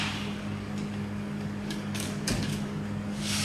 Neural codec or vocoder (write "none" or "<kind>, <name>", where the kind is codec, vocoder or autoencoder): codec, DAC